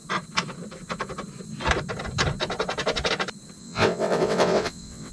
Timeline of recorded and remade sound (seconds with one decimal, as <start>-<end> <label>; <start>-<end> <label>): 0.0-3.6 recorded; 3.6-5.1 remade

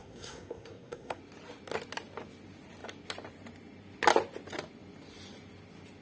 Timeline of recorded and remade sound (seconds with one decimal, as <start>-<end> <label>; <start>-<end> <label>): 0.0-1.2 remade; 1.2-6.0 recorded

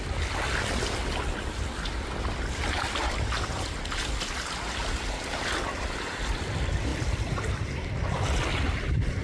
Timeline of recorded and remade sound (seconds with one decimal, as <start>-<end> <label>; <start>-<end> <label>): 0.0-9.2 recorded

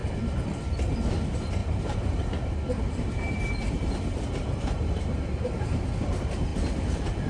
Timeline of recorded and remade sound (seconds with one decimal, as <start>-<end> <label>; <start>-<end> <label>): 0.0-1.6 recorded; 1.6-5.9 remade; 5.9-7.3 recorded

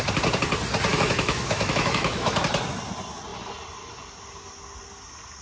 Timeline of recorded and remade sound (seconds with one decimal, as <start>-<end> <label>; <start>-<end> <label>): 0.0-0.9 recorded; 0.9-2.4 remade; 2.4-5.4 recorded

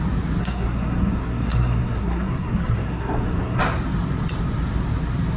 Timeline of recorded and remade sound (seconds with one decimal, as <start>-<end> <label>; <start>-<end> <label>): 0.0-0.4 recorded; 0.4-3.6 remade; 3.6-5.4 recorded